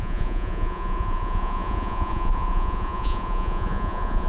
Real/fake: fake